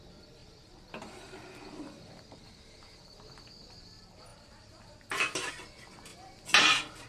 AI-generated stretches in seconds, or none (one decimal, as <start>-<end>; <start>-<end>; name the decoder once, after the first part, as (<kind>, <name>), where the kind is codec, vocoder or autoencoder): 0.4-3.0 (vocoder, BigVGAN v2); 4.3-5.5; 6.1-7.1